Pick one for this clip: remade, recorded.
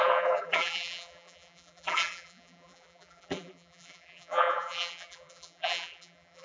remade